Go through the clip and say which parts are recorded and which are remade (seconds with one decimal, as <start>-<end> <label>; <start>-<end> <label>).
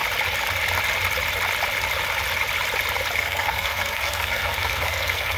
0.0-3.2 recorded; 3.2-5.4 remade